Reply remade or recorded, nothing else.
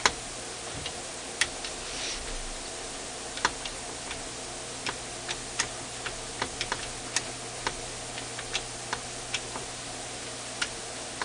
recorded